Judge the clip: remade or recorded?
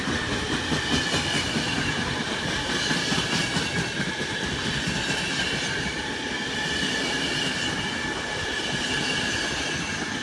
recorded